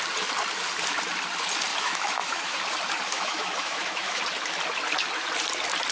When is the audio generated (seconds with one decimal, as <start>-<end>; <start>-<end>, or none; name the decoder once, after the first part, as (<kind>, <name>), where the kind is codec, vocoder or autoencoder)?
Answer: 1.7-2.6 (autoencoder, DAC-VAE); 3.1-4.2